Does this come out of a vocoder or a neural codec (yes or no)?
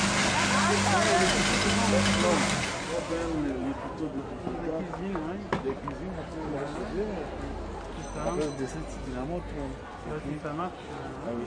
no